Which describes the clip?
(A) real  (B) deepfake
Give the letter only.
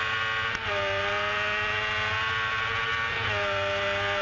A